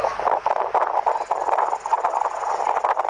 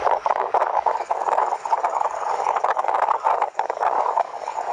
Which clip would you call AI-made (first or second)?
second